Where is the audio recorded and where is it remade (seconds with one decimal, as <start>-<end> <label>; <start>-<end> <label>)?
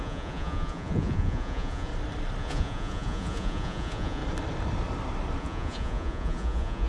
0.0-1.9 remade; 1.9-2.4 recorded; 2.4-4.2 remade; 4.2-5.4 recorded; 5.4-6.9 remade